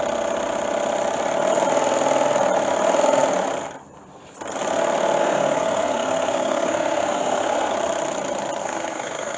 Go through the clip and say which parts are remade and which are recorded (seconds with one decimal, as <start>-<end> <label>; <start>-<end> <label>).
0.0-5.2 recorded; 5.2-7.7 remade; 7.7-8.6 recorded; 8.6-9.4 remade